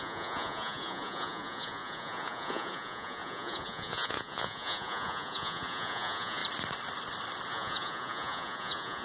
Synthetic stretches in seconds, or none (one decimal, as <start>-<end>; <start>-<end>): 0.0-6.4; 7.5-9.0